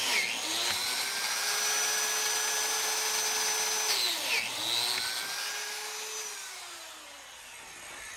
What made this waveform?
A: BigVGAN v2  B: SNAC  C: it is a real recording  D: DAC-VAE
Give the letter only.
C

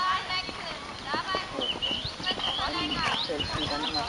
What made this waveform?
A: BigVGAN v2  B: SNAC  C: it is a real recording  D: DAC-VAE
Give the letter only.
A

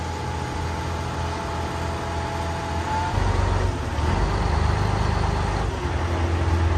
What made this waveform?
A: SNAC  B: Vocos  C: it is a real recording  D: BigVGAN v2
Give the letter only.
C